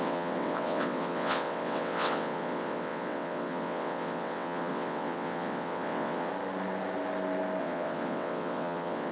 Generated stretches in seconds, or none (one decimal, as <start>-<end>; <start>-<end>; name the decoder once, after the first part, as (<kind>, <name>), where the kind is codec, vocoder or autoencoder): 0.0-6.3 (vocoder, WaveNeXt); 7.6-9.1